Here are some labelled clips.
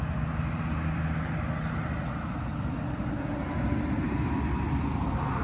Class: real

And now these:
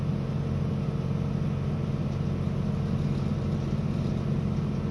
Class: real